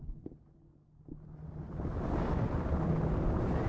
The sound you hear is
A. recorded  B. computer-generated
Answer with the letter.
A